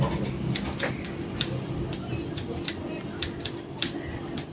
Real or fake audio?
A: real